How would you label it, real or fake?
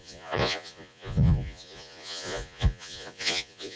fake